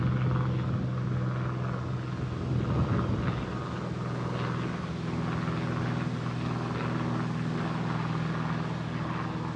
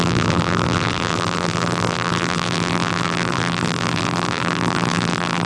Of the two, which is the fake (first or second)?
second